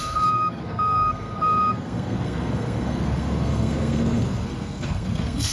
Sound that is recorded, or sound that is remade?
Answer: remade